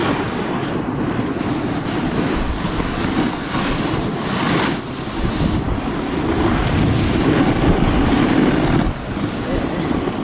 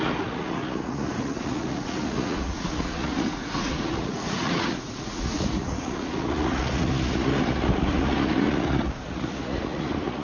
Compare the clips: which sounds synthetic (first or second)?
second